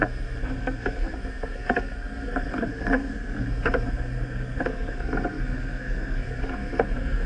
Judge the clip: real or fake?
fake